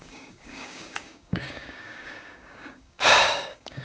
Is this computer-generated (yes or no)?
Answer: yes